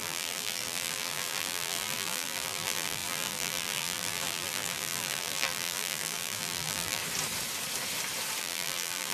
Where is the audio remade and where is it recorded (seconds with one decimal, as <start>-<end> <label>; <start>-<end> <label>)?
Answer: 0.0-7.0 remade; 7.0-8.4 recorded; 8.4-9.1 remade